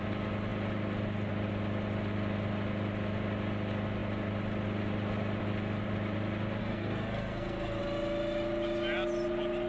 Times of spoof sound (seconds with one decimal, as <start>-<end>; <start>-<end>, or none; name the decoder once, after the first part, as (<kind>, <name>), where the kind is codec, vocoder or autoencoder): 6.6-7.8 (codec, SNAC)